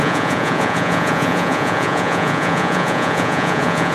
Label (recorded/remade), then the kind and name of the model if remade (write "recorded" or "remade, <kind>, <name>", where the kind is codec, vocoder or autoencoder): remade, vocoder, Vocos